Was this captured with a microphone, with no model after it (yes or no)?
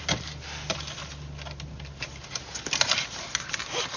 yes